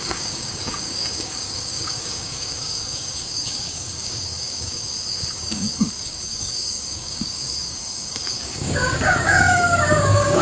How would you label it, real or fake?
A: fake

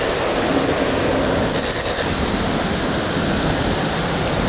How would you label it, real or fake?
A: real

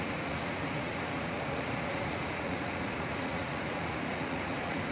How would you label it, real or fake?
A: fake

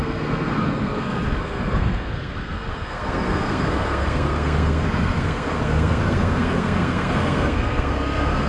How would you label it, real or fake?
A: fake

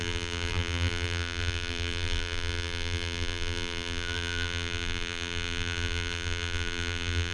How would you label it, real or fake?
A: fake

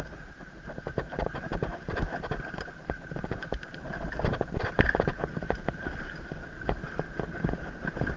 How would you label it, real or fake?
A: fake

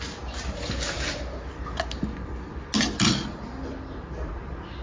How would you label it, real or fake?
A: real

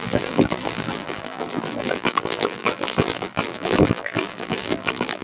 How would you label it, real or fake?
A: fake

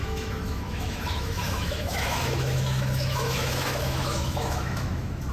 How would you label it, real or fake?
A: fake